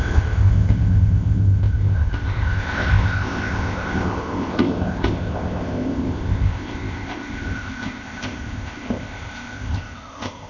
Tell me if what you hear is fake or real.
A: fake